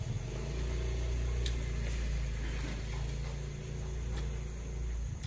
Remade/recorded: recorded